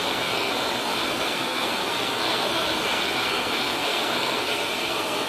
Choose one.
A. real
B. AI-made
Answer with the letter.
B